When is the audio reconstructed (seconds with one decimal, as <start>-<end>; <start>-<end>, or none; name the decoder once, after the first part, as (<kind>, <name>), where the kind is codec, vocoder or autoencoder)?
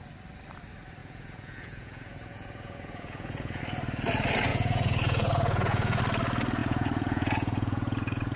1.0-3.6 (vocoder, Vocos); 4.5-6.0; 6.6-8.4